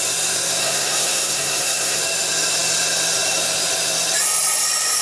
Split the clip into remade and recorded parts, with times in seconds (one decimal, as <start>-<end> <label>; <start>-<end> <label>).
0.0-0.6 recorded; 0.6-2.0 remade; 2.0-5.0 recorded